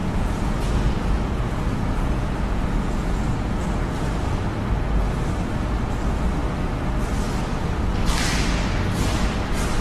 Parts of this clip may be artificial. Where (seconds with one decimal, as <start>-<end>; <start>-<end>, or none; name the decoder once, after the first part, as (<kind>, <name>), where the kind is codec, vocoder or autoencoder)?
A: 0.0-4.4 (vocoder, Vocos)